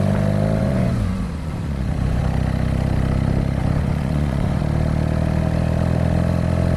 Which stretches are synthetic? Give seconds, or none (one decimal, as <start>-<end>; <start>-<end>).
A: 0.6-2.2; 3.6-4.6